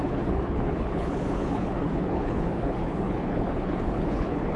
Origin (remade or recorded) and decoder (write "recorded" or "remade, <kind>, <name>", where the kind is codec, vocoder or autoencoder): remade, codec, HILCodec